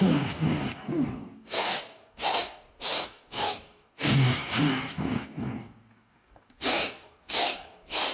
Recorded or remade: remade